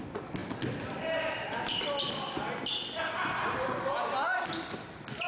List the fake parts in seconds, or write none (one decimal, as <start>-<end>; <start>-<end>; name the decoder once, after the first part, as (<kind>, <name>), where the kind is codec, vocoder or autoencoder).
none